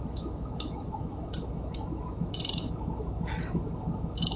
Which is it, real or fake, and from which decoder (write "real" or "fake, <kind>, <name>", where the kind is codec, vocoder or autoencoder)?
fake, autoencoder, DAC-VAE